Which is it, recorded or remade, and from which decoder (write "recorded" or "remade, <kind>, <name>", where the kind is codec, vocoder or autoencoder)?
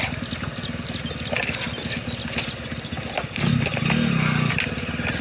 recorded